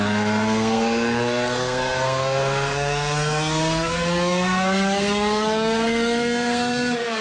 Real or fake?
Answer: fake